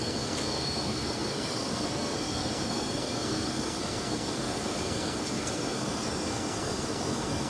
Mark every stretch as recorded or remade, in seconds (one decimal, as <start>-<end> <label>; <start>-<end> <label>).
0.0-7.5 remade

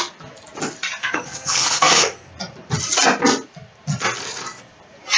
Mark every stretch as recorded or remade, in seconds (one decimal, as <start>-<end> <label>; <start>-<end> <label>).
0.0-1.0 recorded; 1.0-2.3 remade; 2.3-5.2 recorded

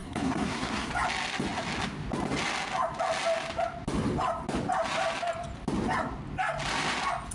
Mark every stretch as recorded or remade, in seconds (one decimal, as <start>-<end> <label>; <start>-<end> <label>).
0.0-0.9 remade; 0.9-7.3 recorded

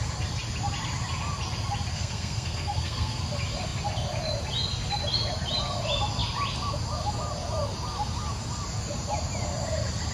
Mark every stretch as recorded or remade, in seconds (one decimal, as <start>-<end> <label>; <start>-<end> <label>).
0.0-1.9 recorded; 1.9-3.2 remade; 3.2-10.1 recorded

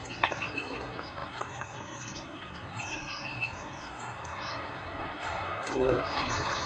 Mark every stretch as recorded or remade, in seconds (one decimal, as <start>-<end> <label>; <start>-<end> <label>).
0.0-6.7 remade